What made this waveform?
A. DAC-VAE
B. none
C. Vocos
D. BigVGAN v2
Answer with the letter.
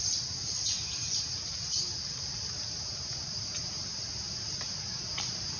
D